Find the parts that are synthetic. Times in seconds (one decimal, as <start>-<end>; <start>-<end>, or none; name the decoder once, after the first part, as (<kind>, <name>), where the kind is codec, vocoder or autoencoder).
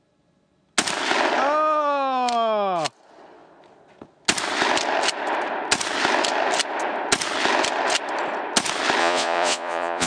9.0-10.1 (vocoder, Vocos)